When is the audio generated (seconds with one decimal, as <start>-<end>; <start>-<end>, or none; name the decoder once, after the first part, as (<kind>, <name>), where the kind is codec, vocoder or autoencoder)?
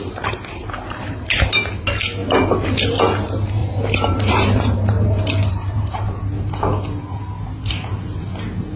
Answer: 3.6-6.2 (vocoder, BigVGAN v2)